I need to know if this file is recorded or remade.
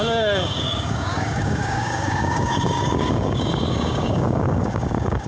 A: remade